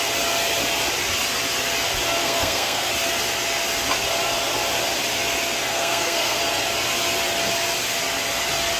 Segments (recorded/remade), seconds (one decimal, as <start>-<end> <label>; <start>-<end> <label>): 0.0-2.2 recorded; 2.2-2.9 remade; 2.9-5.7 recorded; 5.7-6.4 remade; 6.4-8.8 recorded